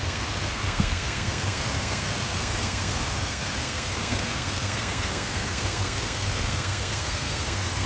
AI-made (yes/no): yes